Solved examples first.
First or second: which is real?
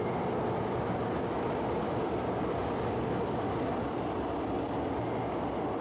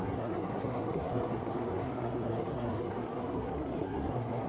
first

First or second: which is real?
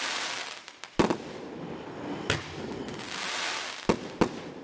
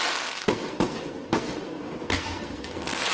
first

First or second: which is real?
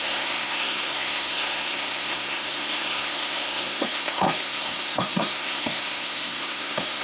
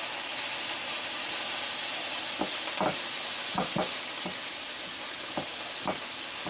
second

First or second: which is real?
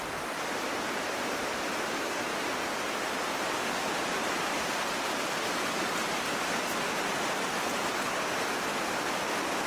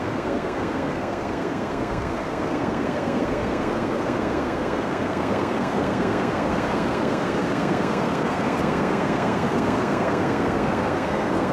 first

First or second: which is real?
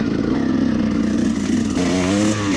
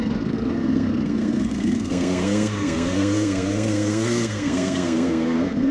first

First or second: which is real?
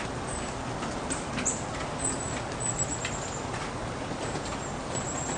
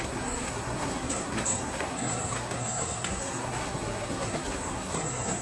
first